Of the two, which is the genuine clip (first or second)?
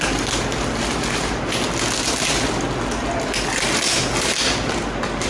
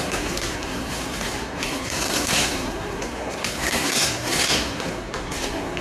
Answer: first